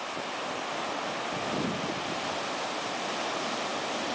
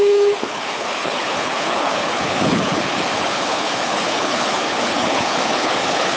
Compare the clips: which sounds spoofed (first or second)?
second